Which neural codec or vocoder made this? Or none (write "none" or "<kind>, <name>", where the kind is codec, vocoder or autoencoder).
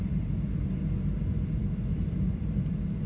none